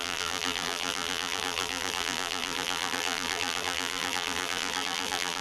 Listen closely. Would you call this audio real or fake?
fake